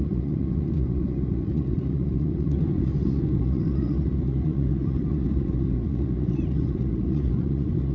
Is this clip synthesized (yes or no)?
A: yes